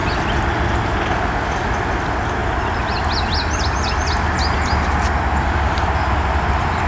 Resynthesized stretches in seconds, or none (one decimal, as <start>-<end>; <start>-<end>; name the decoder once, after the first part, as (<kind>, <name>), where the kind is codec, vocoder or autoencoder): none